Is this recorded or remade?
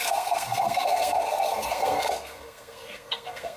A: remade